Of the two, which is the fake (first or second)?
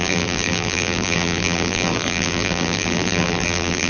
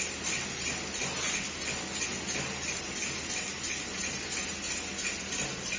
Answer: first